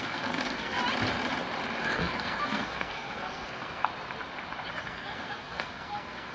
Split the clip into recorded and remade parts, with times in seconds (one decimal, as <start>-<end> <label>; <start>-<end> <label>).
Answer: 0.0-0.8 remade; 0.8-1.8 recorded; 1.8-3.9 remade; 3.9-4.8 recorded; 4.8-6.3 remade